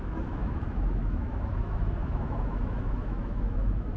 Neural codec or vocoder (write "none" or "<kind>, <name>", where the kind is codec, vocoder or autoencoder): autoencoder, DAC-VAE